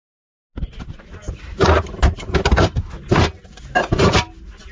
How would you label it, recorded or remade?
recorded